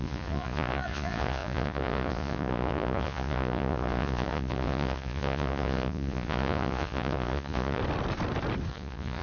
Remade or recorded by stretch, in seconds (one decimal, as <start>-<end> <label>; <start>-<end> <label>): 0.0-7.8 remade; 7.8-8.7 recorded; 8.7-9.2 remade

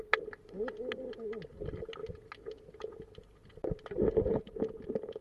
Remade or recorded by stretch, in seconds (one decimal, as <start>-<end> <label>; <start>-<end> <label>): 0.0-5.2 recorded

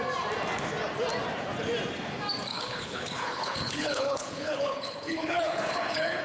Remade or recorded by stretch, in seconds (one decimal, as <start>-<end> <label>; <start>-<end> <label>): 0.0-2.5 recorded; 2.5-6.2 remade

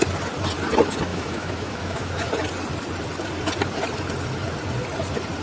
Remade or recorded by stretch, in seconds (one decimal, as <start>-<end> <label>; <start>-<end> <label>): 0.0-1.1 recorded; 1.1-2.1 remade; 2.1-5.4 recorded